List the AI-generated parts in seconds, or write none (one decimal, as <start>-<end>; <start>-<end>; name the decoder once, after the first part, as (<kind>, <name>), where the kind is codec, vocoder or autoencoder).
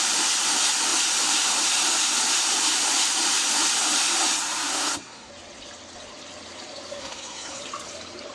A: 4.7-5.3 (codec, SNAC); 7.0-7.6